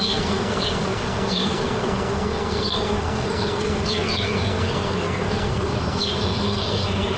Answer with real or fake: fake